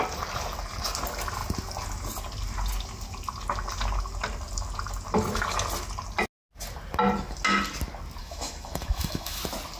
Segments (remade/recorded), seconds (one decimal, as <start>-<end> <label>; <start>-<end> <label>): 0.0-8.2 recorded; 8.2-9.4 remade; 9.4-9.8 recorded